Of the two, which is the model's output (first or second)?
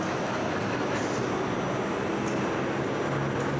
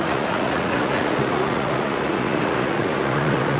second